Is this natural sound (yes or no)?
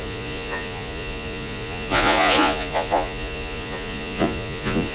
no